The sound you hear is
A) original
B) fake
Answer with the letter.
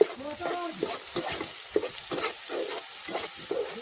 A